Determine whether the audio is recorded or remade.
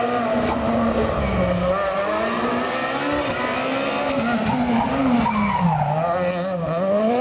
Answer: remade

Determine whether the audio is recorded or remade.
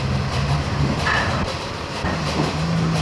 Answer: remade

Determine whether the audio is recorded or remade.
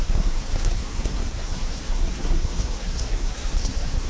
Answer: remade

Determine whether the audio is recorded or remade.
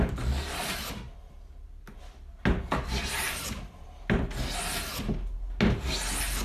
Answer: recorded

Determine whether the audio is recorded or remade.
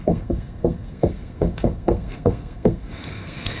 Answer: remade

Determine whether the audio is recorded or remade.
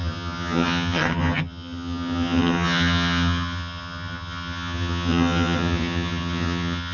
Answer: remade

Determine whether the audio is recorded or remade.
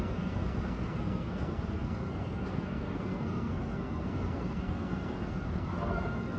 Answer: remade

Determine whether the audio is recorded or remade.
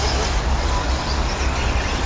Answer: recorded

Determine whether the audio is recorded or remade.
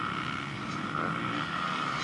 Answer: recorded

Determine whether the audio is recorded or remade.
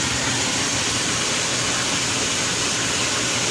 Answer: remade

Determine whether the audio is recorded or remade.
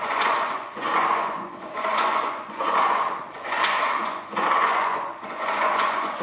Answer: remade